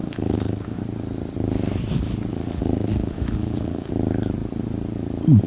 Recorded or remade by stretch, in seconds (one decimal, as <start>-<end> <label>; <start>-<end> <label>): 0.0-0.8 remade; 0.8-2.3 recorded; 2.3-3.9 remade; 3.9-5.5 recorded